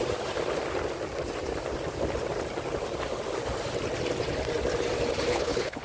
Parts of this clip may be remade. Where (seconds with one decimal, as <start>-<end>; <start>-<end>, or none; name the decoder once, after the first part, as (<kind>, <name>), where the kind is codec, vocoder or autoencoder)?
5.3-5.8 (codec, HILCodec)